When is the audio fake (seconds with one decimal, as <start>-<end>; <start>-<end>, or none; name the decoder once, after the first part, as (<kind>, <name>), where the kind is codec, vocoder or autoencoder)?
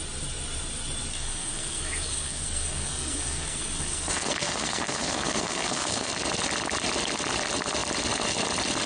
1.1-6.1 (codec, SNAC)